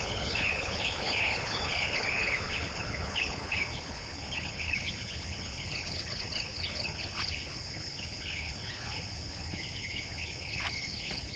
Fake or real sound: fake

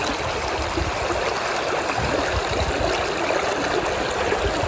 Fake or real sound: real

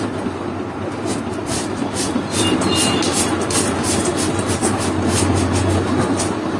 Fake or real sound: real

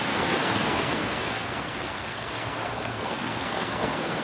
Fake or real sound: fake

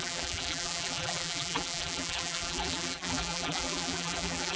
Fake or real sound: fake